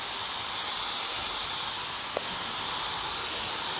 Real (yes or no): yes